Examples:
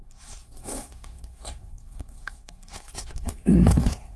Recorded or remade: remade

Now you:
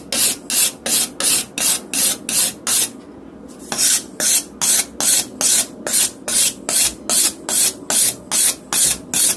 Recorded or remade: recorded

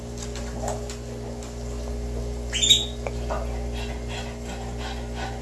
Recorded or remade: recorded